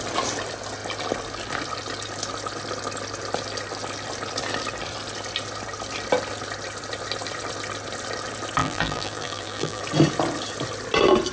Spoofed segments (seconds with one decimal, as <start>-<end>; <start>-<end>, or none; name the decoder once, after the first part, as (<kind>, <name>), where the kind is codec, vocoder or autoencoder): 8.6-9.8 (vocoder, BigVGAN v2)